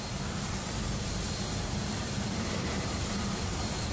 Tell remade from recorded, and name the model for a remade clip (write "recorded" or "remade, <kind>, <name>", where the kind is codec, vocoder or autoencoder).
remade, vocoder, BigVGAN v2